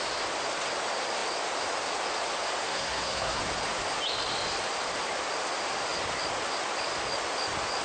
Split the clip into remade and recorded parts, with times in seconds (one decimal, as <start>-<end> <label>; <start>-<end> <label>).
0.0-2.6 recorded; 2.6-3.4 remade; 3.4-7.8 recorded